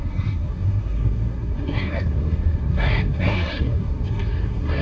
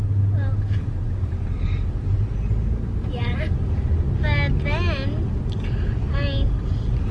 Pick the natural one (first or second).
second